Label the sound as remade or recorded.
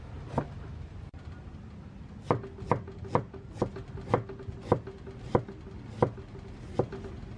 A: recorded